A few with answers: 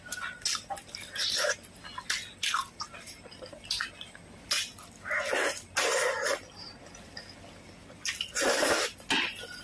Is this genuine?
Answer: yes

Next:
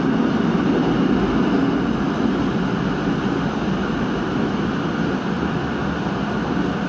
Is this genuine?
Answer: yes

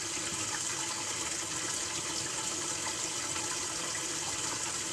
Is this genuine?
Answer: yes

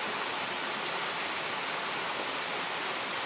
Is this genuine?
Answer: yes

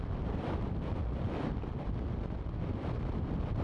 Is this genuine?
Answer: yes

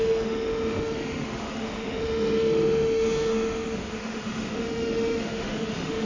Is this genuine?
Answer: no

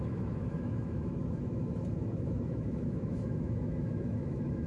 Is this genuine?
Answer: no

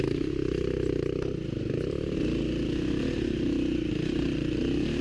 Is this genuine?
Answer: yes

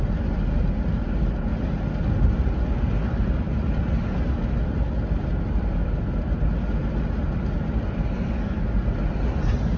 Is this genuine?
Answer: yes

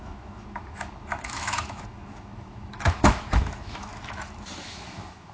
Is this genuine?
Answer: no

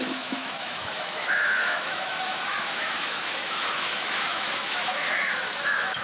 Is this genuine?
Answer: no